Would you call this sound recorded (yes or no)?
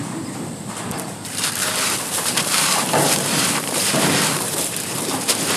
no